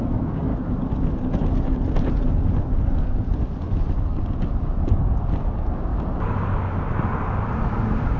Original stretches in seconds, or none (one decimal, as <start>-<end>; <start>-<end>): 0.5-5.4; 5.9-8.2